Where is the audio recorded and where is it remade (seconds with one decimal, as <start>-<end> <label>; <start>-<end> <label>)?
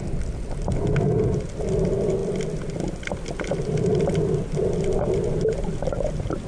0.0-6.5 recorded